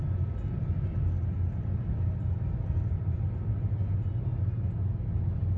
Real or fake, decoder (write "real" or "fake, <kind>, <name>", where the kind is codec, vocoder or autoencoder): real